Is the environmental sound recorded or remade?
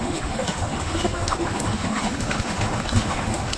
remade